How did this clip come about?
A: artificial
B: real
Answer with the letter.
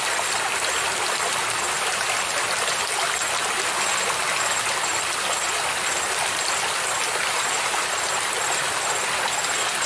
B